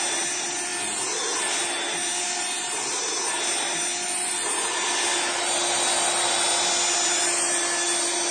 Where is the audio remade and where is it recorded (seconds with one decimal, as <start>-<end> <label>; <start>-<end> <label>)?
0.0-8.3 recorded